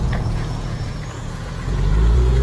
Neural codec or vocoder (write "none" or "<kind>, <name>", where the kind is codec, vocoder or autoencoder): vocoder, Vocos